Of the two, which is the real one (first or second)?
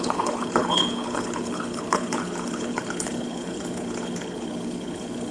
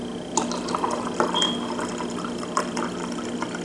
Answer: second